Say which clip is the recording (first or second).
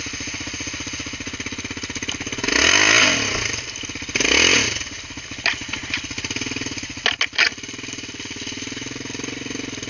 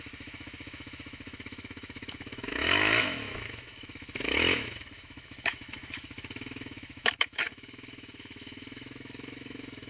first